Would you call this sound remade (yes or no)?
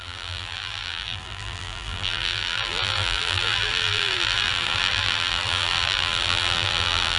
yes